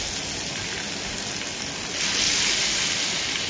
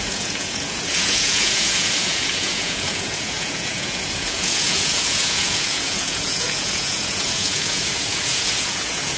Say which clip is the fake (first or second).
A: second